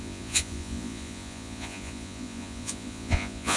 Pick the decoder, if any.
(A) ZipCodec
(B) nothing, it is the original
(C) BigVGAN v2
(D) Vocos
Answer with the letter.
D